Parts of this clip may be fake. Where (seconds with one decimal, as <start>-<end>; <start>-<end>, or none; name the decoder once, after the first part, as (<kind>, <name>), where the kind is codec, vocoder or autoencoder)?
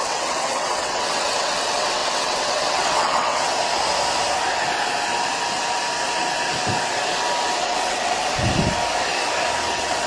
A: 0.0-3.5 (vocoder, WaveNeXt); 7.6-8.2; 9.7-10.1